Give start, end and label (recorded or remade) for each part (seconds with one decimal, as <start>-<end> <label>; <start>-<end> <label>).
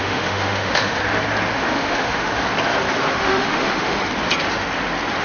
0.0-1.0 remade; 1.0-1.5 recorded; 1.5-2.3 remade; 2.3-3.1 recorded; 3.1-4.0 remade; 4.0-5.2 recorded